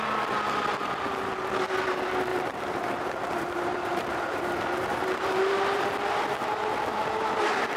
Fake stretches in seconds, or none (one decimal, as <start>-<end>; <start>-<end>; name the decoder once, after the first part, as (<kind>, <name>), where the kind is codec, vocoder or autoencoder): 2.3-5.8 (vocoder, BigVGAN v2)